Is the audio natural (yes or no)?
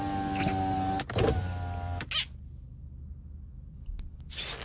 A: yes